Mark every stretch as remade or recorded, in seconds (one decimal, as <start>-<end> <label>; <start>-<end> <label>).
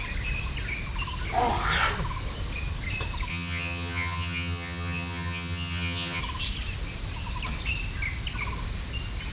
0.0-3.3 recorded; 3.3-6.2 remade; 6.2-9.3 recorded